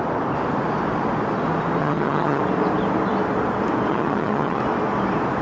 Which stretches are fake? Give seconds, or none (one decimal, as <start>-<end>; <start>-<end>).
1.8-2.4; 3.9-4.6